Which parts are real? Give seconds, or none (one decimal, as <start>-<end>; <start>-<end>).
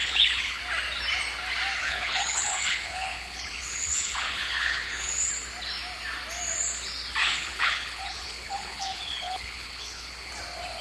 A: 0.6-1.8; 5.3-7.2; 10.3-10.8